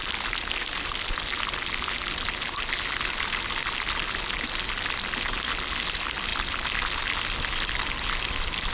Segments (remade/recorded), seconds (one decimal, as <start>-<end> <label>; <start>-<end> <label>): 0.0-8.7 recorded

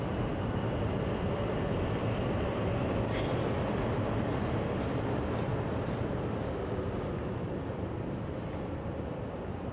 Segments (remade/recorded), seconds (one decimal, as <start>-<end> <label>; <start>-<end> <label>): 0.0-9.7 recorded

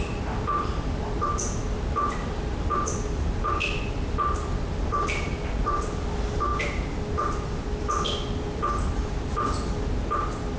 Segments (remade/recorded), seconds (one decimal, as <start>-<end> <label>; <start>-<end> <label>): 0.0-10.6 recorded

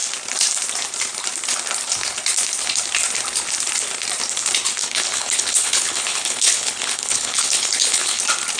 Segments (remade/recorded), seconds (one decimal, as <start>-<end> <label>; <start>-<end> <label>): 0.0-4.8 recorded; 4.8-8.2 remade; 8.2-8.6 recorded

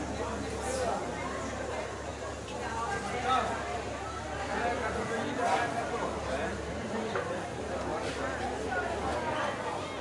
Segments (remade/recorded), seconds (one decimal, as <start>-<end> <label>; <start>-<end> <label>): 0.0-10.0 recorded